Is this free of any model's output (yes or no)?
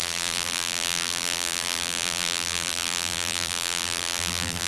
no